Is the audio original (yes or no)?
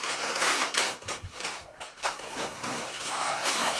no